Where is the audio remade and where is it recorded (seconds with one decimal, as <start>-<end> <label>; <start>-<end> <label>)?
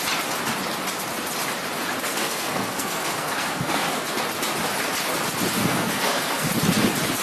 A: 0.0-2.1 recorded; 2.1-4.2 remade; 4.2-5.6 recorded; 5.6-6.5 remade; 6.5-7.2 recorded